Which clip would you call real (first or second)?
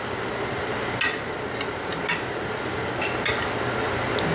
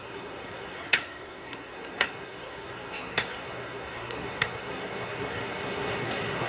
first